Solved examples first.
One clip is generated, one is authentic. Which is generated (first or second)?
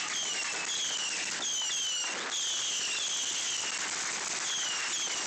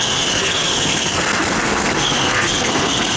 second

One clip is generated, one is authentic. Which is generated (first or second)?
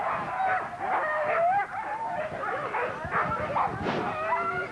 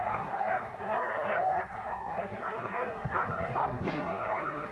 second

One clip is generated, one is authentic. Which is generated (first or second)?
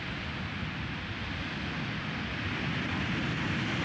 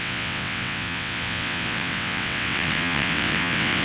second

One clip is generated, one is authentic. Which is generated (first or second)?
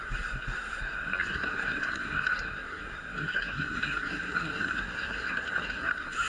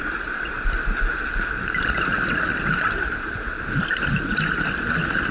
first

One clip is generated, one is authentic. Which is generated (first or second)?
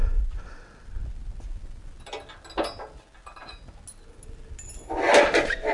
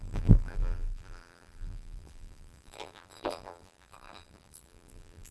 second